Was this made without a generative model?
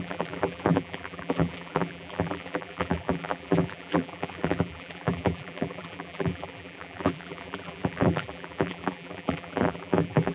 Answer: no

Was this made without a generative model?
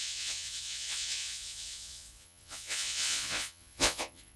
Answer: no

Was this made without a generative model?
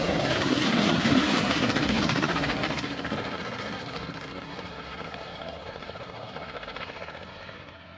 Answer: no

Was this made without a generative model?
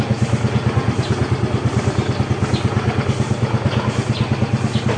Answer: yes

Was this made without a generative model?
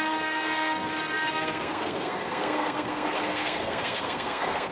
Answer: no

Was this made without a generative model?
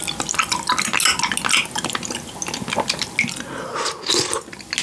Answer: yes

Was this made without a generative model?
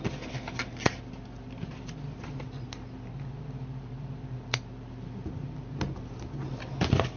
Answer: no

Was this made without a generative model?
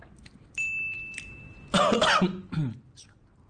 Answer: yes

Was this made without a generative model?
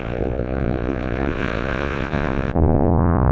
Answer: no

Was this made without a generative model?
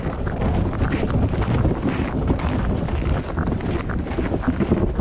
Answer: yes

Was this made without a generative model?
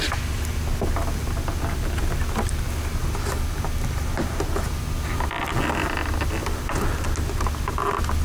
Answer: yes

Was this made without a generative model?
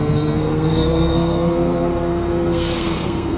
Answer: no